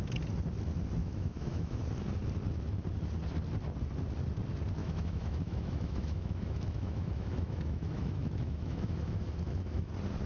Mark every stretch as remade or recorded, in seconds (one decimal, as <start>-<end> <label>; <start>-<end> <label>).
0.0-1.0 recorded; 1.0-1.8 remade; 1.8-4.8 recorded; 4.8-9.9 remade; 9.9-10.3 recorded